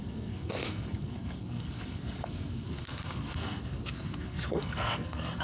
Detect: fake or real fake